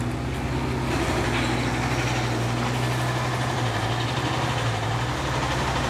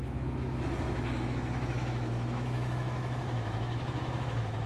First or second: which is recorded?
first